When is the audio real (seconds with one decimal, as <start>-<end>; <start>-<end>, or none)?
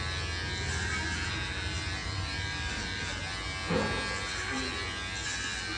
0.0-2.0; 3.2-5.8